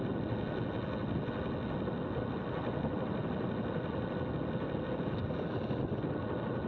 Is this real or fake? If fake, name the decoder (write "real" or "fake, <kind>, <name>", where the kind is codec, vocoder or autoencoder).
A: real